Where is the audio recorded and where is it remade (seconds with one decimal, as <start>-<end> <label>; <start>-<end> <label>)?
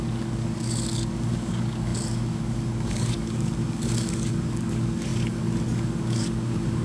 0.0-6.8 remade